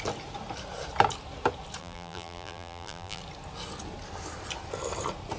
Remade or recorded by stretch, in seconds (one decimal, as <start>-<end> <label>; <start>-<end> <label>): 0.0-1.8 recorded; 1.8-3.2 remade; 3.2-5.4 recorded